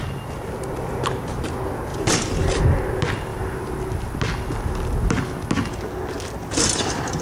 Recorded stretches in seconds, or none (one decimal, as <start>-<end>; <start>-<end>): 0.0-1.9; 2.6-3.3; 4.1-6.4